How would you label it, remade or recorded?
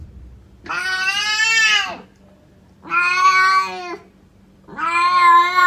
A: recorded